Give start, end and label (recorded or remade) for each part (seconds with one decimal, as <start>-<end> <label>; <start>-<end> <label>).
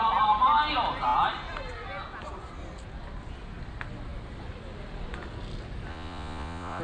0.0-5.9 recorded; 5.9-6.8 remade